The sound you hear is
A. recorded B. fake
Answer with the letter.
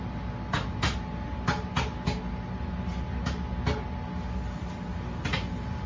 A